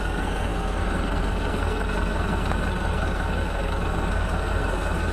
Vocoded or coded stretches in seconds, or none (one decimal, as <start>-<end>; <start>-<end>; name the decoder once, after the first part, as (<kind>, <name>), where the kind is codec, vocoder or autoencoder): 0.0-5.1 (codec, SNAC)